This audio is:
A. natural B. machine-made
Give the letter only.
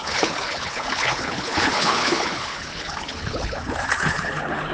B